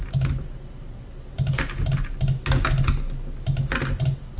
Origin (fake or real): real